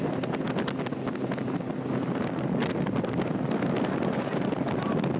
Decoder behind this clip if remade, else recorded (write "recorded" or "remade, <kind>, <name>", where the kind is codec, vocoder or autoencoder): recorded